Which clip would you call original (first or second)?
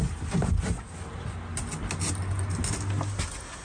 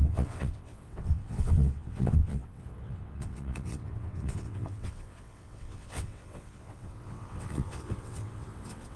first